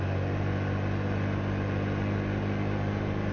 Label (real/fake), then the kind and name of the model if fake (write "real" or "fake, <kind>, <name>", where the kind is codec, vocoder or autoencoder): real